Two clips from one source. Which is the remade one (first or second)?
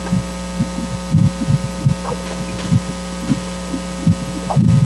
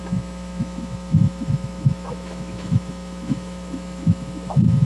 second